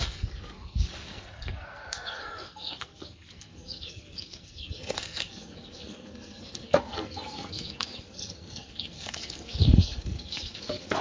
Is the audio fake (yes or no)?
yes